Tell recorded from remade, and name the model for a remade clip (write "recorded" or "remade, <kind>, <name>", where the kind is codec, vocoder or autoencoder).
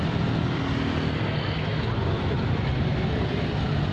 recorded